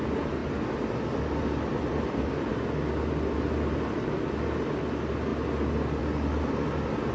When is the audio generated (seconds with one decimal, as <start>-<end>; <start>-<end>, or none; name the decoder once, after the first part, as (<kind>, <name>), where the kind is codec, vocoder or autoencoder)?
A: none